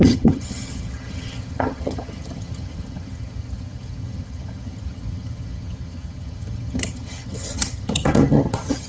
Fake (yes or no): yes